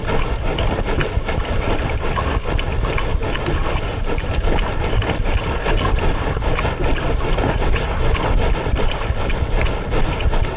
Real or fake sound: real